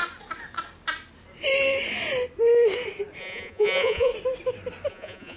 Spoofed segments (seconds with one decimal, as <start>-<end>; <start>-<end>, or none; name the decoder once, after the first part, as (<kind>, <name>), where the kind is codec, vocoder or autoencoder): 3.2-4.1 (vocoder, Vocos); 4.9-5.4